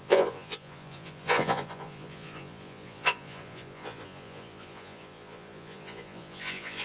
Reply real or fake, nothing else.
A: fake